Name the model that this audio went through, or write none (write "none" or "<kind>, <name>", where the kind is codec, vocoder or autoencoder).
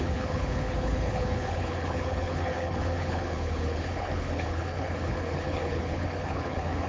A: codec, HILCodec